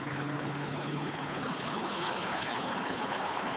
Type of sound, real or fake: fake